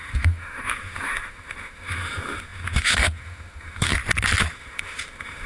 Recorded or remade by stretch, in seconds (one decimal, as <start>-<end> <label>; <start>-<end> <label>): 0.0-4.0 remade; 4.0-4.5 recorded; 4.5-5.5 remade